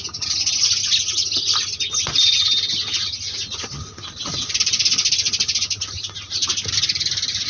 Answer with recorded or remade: recorded